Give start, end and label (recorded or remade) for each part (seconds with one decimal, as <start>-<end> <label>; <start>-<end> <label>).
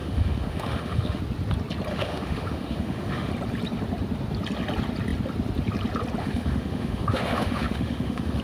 0.0-1.2 remade; 1.2-1.9 recorded; 1.9-3.3 remade; 3.3-6.2 recorded; 6.2-8.4 remade